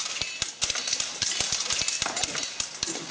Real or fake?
real